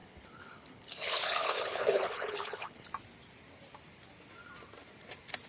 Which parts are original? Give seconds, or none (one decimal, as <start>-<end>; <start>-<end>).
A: 2.9-5.5